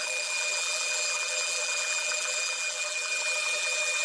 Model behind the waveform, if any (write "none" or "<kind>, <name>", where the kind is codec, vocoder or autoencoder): vocoder, BigVGAN v2